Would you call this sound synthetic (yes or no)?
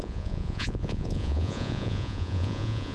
yes